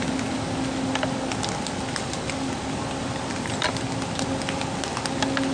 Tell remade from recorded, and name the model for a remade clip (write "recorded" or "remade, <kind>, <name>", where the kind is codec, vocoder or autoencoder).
recorded